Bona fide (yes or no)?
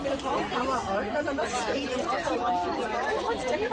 yes